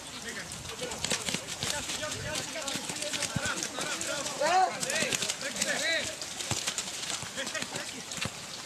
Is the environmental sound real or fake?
fake